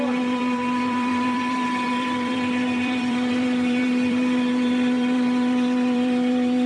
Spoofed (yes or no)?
yes